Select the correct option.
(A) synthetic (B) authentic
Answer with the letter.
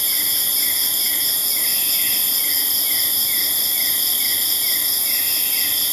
B